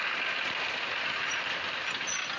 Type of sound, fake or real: real